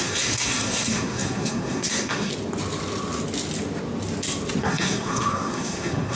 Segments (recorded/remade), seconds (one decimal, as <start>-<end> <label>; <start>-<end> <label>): 0.0-2.3 remade; 2.3-4.6 recorded; 4.6-6.2 remade